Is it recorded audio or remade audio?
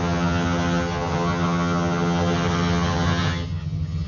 remade